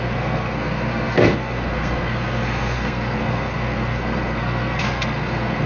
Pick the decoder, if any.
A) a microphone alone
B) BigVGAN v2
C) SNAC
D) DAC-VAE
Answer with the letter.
C